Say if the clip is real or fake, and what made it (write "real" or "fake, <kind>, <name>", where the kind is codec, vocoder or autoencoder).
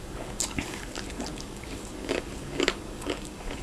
fake, codec, DAC